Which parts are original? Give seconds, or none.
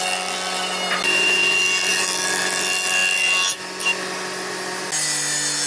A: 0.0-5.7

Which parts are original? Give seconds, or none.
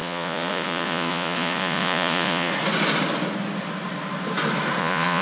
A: 2.5-4.8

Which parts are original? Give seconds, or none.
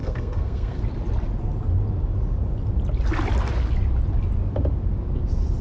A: 0.8-5.6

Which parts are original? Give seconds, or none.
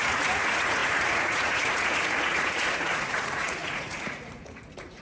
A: none